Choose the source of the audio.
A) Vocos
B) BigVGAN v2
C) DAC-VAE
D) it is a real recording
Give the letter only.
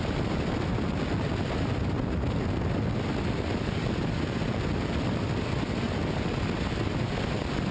D